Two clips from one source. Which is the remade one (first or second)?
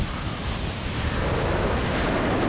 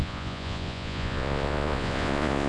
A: second